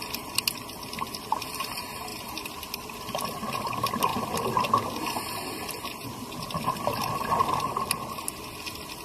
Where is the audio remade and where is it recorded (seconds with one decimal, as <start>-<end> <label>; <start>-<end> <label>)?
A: 0.0-9.0 recorded